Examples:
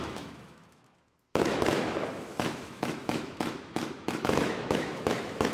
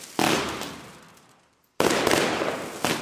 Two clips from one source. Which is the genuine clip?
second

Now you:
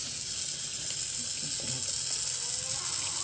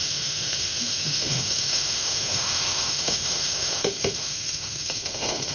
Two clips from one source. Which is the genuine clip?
first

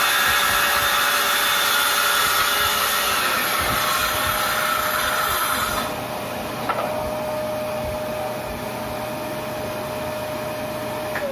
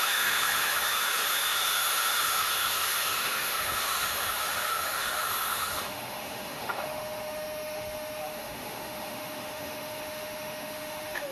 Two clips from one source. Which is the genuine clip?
first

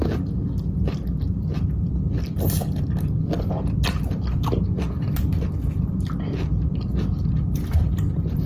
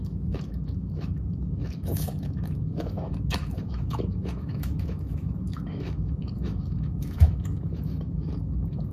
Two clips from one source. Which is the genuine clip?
first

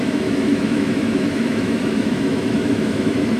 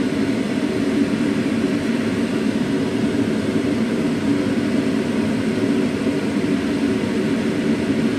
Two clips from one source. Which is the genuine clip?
second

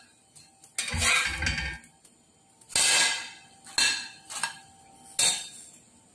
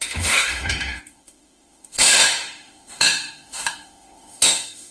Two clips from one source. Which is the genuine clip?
first